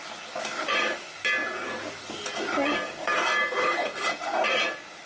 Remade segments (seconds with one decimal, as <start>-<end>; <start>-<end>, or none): 3.6-4.1